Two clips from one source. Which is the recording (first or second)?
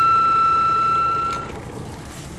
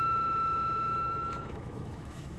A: first